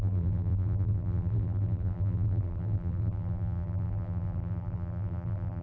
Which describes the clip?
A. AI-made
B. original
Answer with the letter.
A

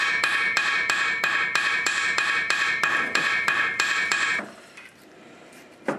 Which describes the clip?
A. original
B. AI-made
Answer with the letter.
B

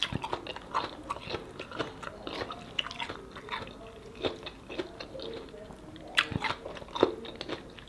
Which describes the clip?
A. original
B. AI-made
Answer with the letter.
A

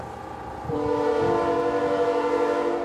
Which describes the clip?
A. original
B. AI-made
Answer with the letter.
A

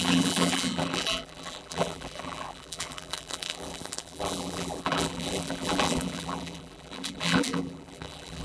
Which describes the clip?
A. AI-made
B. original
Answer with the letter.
A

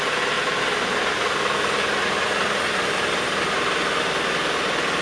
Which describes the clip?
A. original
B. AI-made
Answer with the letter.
A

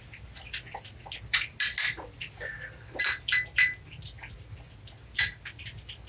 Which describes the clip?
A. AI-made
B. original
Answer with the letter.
B